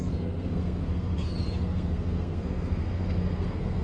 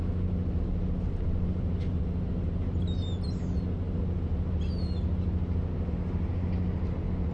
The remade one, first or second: first